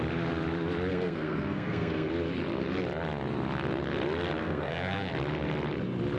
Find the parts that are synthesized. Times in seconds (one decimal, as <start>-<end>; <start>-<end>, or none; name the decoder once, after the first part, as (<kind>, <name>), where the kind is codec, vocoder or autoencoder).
0.9-2.1 (codec, SNAC); 4.4-5.1